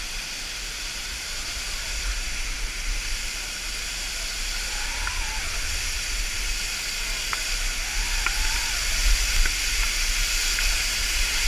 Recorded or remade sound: recorded